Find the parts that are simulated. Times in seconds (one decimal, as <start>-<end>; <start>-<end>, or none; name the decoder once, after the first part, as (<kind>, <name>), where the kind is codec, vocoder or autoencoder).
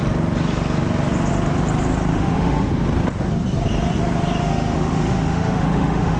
2.1-2.7 (autoencoder, DAC-VAE); 4.4-6.2